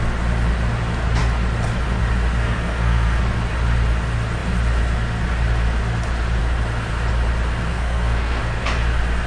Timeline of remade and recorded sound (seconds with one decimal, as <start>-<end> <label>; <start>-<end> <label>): 0.0-2.4 recorded; 2.4-3.2 remade; 3.2-7.7 recorded; 7.7-8.4 remade; 8.4-9.3 recorded